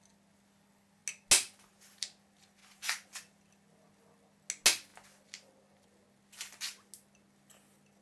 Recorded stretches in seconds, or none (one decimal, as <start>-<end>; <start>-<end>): 0.0-8.0